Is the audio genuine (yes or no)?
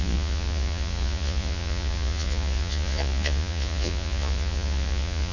no